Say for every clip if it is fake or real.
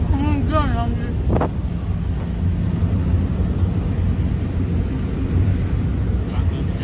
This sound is real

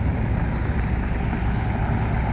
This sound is real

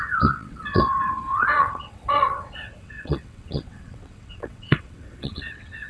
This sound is fake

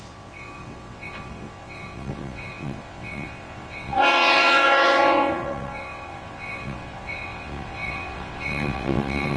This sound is fake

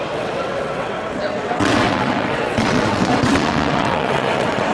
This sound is fake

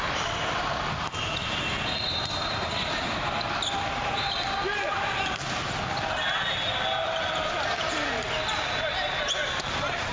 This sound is real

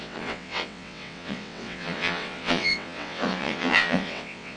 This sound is fake